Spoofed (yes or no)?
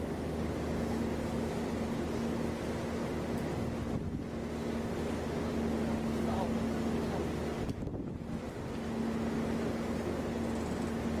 no